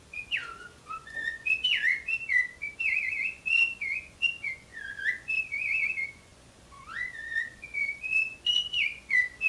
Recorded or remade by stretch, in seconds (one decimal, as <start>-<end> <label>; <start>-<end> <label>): 0.0-9.5 remade